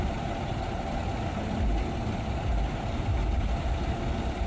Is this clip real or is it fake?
real